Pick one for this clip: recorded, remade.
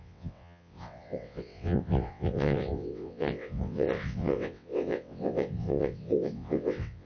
remade